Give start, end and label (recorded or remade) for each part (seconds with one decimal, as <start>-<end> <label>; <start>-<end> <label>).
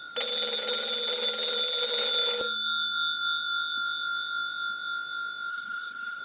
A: 0.0-5.5 recorded; 5.5-6.2 remade